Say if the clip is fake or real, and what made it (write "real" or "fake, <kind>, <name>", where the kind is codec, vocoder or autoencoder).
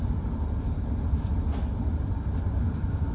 real